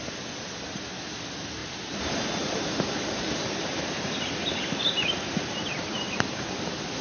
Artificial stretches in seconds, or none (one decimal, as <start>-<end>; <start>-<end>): none